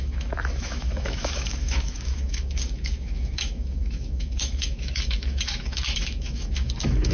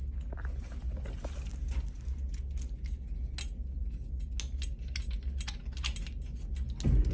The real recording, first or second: second